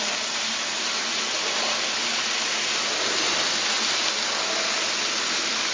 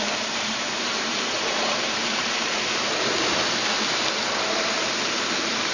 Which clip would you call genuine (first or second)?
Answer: first